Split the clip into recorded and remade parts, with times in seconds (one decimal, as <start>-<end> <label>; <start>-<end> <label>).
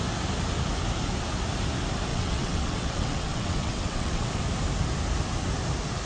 0.0-2.1 recorded; 2.1-4.3 remade; 4.3-6.1 recorded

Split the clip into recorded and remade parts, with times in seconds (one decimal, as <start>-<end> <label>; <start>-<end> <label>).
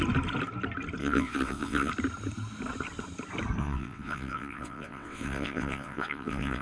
0.0-1.0 recorded; 1.0-1.9 remade; 1.9-3.6 recorded; 3.6-6.6 remade